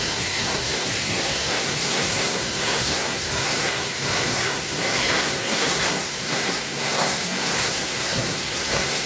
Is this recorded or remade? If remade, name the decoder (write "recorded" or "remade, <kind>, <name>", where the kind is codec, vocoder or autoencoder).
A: remade, codec, SNAC